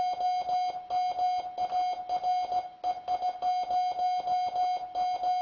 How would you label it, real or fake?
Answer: real